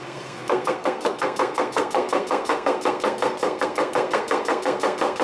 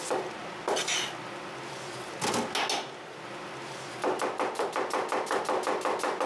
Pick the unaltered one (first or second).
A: second